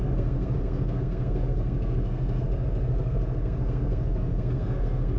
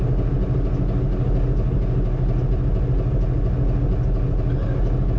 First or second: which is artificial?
first